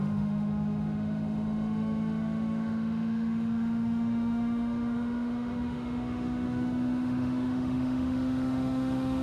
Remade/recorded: remade